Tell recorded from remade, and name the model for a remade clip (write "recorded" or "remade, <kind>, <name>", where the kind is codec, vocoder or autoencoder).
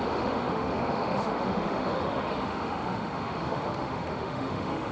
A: remade, autoencoder, DAC-VAE